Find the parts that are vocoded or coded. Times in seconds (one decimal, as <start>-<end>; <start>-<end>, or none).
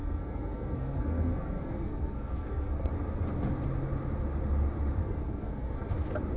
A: 0.0-2.9; 5.0-5.9